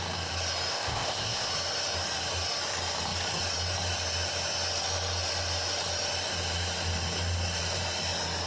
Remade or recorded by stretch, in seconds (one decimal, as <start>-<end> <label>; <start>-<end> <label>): 0.0-0.7 recorded; 0.7-1.5 remade; 1.5-8.5 recorded